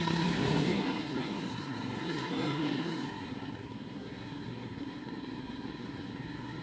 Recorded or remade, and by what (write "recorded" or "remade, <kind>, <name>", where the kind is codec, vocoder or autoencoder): remade, codec, SNAC